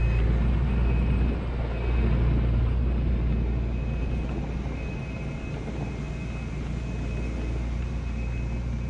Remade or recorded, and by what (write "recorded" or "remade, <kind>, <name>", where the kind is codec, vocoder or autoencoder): recorded